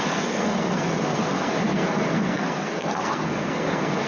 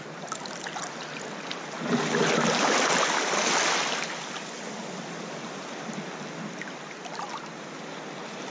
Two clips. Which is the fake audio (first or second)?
first